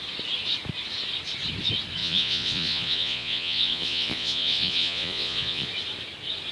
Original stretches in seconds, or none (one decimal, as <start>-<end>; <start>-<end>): 0.0-2.0; 5.7-6.5